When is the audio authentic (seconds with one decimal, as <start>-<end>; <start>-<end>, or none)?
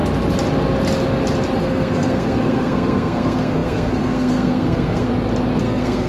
0.0-1.6; 5.1-5.6